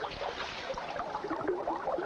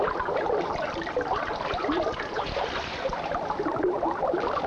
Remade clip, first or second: second